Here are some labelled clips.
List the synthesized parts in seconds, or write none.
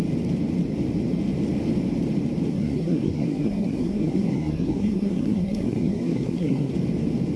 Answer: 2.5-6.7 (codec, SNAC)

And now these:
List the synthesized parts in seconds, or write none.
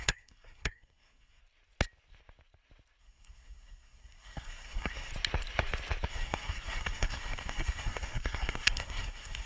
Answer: 0.0-1.4 (codec, SNAC); 3.0-5.1; 6.1-9.5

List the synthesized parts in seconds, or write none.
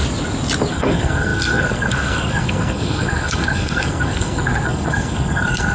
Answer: 0.7-5.7 (codec, SNAC)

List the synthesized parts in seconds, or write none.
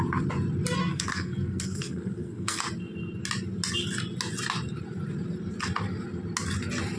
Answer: 0.8-2.6 (codec, SNAC)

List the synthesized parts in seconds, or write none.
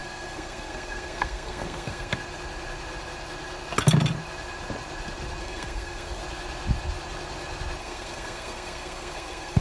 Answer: 0.0-2.1 (codec, SNAC); 5.4-6.2; 7.8-9.6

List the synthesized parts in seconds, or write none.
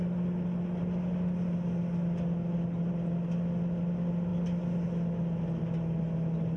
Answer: none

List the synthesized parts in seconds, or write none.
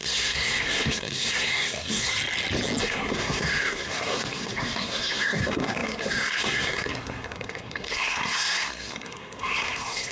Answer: 0.0-2.1 (codec, SNAC); 2.8-10.1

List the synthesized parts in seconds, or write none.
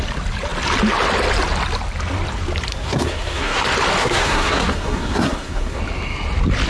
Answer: 2.7-3.6 (codec, SNAC); 4.0-5.8